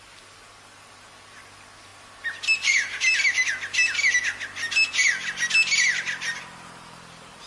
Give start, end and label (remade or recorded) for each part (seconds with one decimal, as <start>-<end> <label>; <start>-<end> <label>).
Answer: 0.0-7.5 recorded